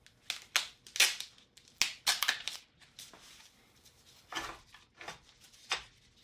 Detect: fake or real real